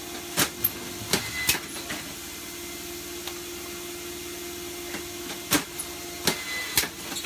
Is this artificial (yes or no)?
no